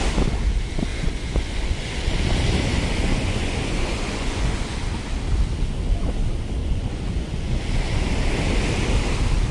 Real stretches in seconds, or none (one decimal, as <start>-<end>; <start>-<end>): 0.0-0.9; 2.1-2.9; 4.8-6.6; 8.0-9.5